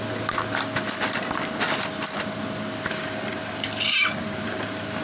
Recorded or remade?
recorded